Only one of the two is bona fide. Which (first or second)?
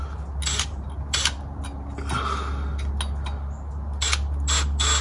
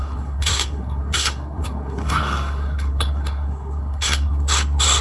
first